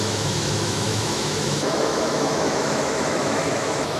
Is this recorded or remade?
remade